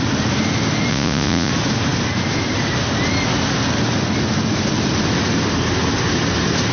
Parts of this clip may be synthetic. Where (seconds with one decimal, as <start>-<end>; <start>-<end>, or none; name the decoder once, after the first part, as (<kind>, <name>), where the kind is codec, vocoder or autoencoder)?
0.9-1.5 (vocoder, Vocos)